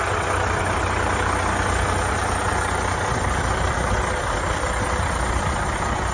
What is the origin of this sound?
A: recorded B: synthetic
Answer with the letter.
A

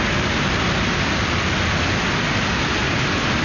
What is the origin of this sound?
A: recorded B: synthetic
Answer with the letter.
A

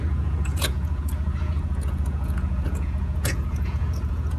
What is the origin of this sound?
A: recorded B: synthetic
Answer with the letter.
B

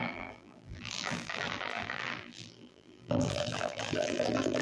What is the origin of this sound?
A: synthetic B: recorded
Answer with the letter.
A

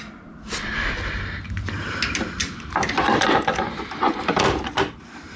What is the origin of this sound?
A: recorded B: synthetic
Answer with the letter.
A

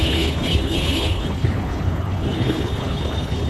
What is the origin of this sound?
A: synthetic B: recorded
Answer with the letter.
A